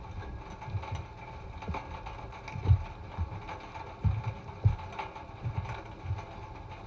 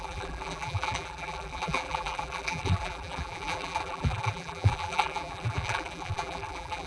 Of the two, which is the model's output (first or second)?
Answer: second